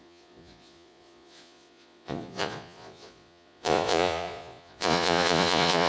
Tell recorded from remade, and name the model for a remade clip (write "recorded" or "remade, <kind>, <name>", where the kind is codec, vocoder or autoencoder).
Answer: remade, vocoder, Vocos